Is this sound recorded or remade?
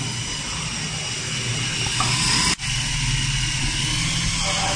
recorded